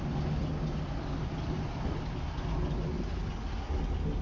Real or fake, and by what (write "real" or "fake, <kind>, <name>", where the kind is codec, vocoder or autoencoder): real